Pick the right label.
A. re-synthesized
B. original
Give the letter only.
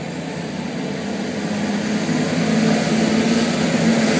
B